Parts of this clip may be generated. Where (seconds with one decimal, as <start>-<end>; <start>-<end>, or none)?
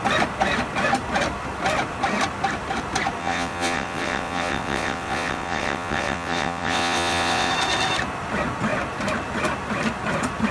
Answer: 3.2-7.5